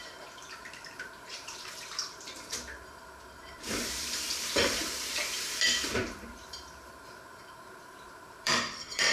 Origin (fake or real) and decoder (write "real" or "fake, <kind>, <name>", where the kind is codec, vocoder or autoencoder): fake, vocoder, BigVGAN v2